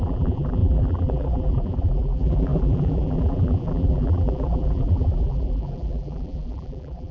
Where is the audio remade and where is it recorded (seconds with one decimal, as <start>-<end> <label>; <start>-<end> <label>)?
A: 0.0-7.1 remade